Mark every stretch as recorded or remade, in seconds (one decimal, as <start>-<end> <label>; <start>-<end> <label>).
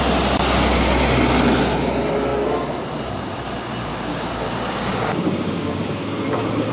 0.0-3.9 recorded; 3.9-6.7 remade